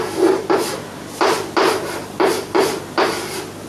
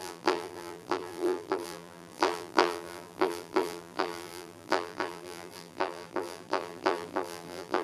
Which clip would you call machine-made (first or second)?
second